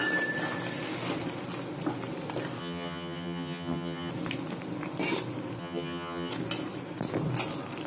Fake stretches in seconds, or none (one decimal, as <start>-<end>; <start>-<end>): 2.6-4.1; 5.6-6.3